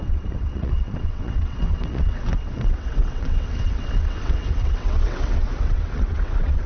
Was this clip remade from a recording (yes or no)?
yes